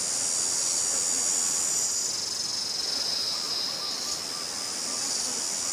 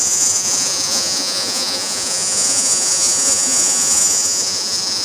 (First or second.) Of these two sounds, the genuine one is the first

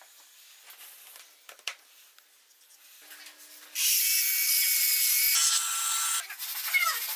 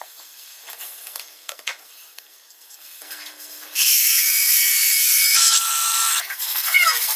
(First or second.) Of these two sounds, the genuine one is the first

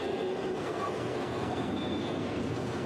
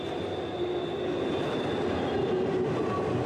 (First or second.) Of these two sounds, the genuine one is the second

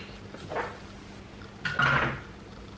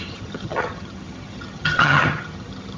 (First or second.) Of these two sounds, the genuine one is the first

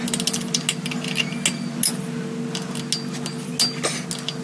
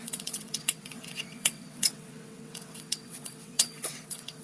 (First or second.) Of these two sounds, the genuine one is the first